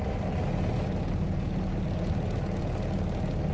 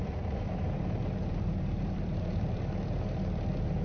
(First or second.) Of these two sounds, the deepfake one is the second